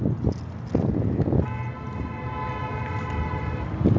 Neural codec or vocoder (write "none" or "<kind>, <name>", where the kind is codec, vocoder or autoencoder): none